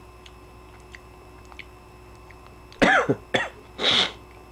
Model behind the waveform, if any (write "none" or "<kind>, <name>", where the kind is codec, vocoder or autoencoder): none